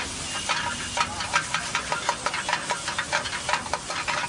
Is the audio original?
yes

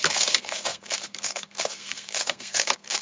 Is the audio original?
no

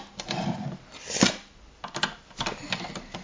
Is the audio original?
yes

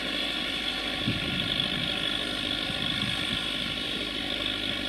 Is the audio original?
yes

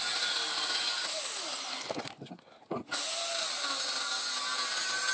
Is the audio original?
yes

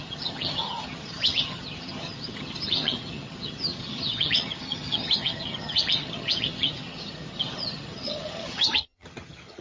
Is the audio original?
no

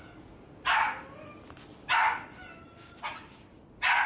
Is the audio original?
yes